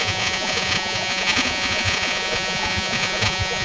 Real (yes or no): no